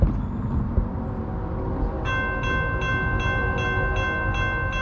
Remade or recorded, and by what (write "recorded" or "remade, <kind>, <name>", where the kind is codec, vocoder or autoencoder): recorded